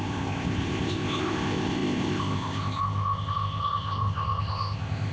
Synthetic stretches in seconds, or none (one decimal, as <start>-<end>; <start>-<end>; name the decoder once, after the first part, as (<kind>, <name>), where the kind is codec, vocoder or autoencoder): 0.0-5.1 (codec, ZipCodec)